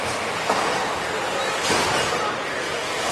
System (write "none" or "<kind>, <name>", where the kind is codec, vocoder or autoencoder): none